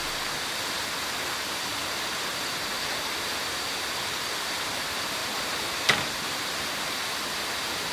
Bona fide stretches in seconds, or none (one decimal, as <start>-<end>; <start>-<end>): 0.0-1.7; 3.1-5.2; 7.0-7.9